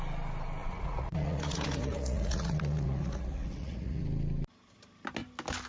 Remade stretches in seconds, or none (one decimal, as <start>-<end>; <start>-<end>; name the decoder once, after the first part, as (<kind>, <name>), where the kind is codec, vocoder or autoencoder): 0.6-4.0 (vocoder, Vocos)

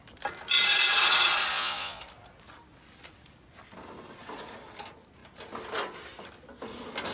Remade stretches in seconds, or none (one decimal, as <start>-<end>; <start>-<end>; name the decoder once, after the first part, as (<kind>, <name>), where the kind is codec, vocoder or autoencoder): 1.5-2.0 (vocoder, Vocos)

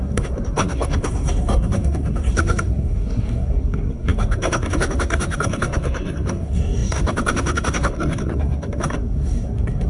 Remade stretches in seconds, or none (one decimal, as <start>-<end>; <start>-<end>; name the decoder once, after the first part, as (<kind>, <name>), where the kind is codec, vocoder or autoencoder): 0.0-9.9 (codec, SNAC)

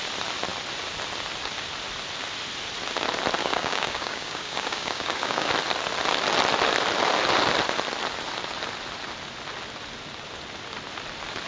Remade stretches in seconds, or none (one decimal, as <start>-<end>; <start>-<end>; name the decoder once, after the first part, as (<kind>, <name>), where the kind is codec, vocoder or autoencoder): 3.4-5.5 (codec, DAC)

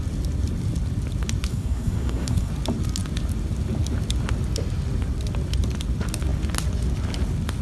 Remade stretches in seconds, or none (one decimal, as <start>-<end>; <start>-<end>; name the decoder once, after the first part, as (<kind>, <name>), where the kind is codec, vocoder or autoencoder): 1.5-2.5 (codec, SNAC)

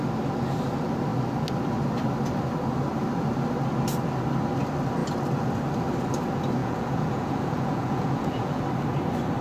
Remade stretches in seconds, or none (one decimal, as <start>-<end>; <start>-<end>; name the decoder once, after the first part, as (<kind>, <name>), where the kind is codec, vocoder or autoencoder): 6.6-8.6 (vocoder, Vocos)

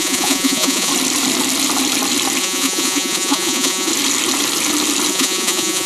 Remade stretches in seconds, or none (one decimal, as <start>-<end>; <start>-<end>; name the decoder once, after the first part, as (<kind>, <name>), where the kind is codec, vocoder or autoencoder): 0.0-0.9 (vocoder, Vocos); 2.4-3.9; 5.1-5.9

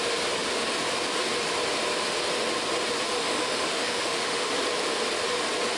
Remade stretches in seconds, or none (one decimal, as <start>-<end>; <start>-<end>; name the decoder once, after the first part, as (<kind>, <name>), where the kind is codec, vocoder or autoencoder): 3.2-4.5 (autoencoder, DAC-VAE)